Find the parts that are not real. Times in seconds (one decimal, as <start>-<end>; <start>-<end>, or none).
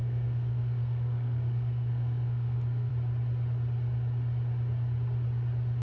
0.0-2.9